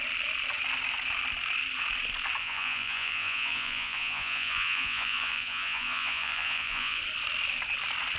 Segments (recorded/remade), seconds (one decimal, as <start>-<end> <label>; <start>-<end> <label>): 0.0-2.4 recorded; 2.4-7.0 remade; 7.0-8.2 recorded